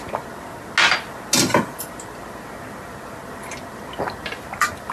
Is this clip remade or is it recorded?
recorded